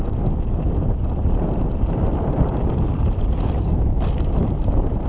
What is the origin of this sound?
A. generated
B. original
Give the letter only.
B